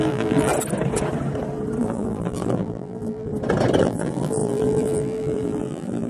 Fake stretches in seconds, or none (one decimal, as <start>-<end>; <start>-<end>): 0.0-0.5; 1.8-3.3; 3.8-6.1